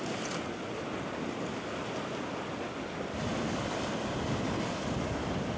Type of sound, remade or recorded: recorded